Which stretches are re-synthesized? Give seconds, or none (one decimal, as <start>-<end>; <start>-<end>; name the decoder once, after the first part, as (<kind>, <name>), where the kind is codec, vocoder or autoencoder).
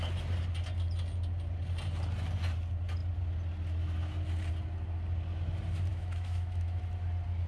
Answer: 5.9-6.8 (autoencoder, DAC-VAE)